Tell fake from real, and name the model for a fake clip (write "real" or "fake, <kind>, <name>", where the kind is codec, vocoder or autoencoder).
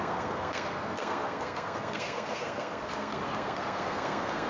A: fake, codec, SNAC